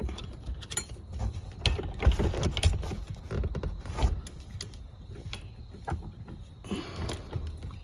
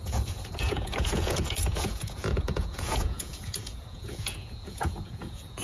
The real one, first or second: first